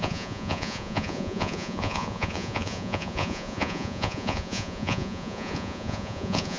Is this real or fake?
fake